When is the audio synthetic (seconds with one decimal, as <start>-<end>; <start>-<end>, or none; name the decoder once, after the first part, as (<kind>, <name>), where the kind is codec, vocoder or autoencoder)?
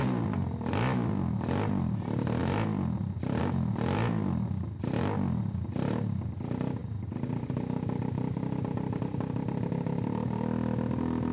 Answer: none